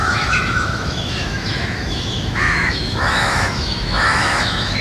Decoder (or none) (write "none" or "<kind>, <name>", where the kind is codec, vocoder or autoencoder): autoencoder, DAC-VAE